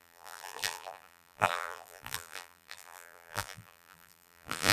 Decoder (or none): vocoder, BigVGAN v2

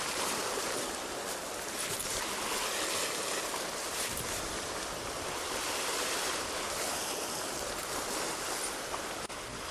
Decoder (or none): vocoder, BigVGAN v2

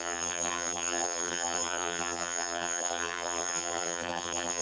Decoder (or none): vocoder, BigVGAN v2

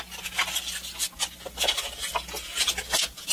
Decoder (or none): none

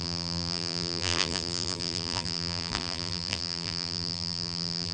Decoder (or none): vocoder, BigVGAN v2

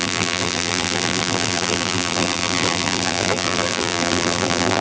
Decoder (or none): vocoder, BigVGAN v2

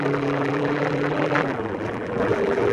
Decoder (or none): vocoder, BigVGAN v2